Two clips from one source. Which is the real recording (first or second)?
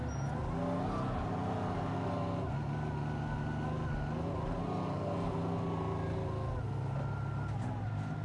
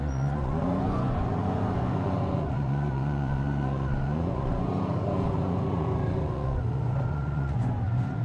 first